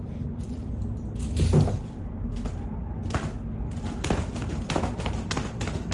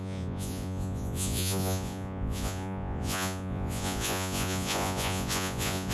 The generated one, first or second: second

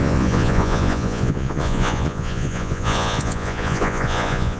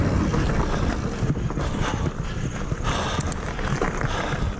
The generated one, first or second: first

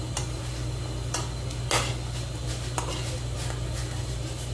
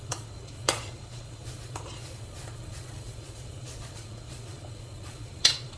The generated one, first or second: second